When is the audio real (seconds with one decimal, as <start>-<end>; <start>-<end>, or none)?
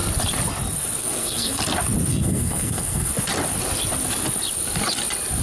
0.0-1.0; 1.6-2.1; 3.1-5.4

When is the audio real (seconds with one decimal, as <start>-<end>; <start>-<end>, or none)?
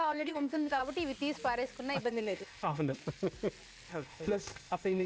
0.8-2.0; 3.0-3.9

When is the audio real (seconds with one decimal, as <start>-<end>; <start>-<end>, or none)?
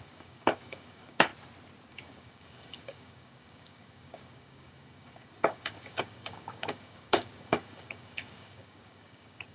1.3-1.9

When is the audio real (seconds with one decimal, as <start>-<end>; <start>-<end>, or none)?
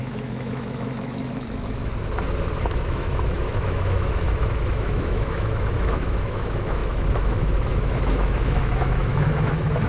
1.8-2.6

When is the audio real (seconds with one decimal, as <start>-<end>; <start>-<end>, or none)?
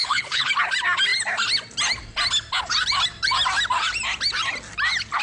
0.5-5.2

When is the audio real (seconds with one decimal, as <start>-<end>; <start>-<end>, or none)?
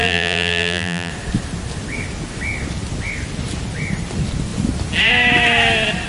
1.1-6.1